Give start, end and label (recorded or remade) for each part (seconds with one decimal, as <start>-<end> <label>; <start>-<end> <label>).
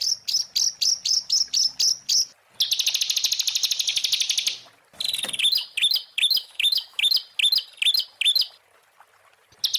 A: 0.0-6.4 recorded; 6.4-7.1 remade; 7.1-9.8 recorded